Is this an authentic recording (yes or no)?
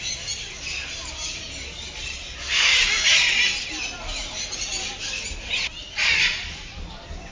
yes